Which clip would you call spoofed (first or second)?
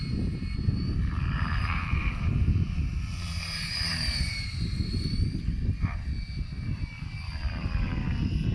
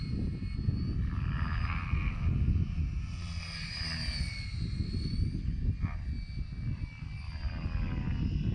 first